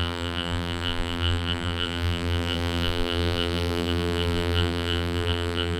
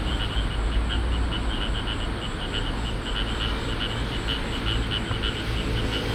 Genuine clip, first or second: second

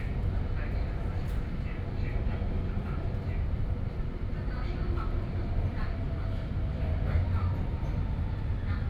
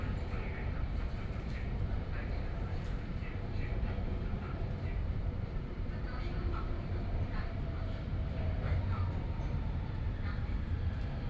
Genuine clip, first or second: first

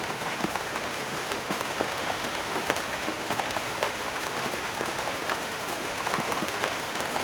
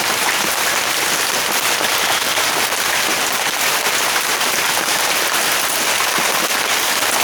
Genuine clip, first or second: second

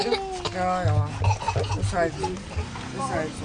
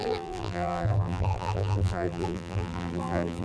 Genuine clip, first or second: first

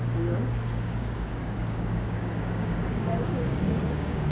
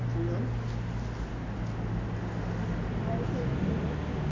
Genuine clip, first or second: second